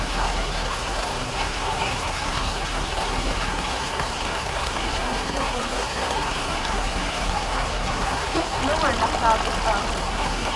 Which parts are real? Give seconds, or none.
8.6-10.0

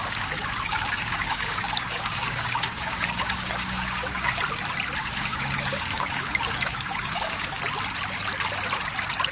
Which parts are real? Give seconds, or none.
4.4-5.0; 7.6-9.3

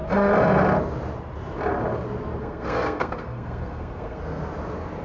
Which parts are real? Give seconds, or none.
0.0-2.4; 4.2-5.0

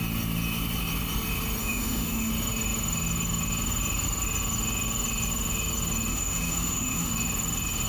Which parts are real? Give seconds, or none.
0.0-1.6; 2.3-6.1; 7.1-7.9

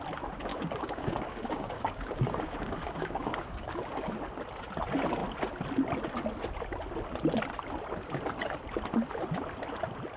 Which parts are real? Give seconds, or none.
0.0-0.5; 4.1-10.2

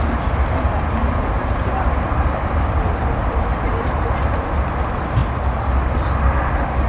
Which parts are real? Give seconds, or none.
0.0-1.0; 4.1-5.2; 5.7-6.9

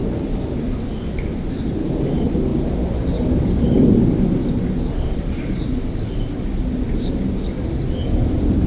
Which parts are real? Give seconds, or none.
0.0-8.7

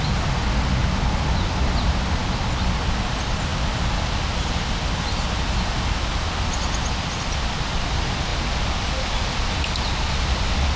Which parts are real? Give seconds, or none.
0.0-10.8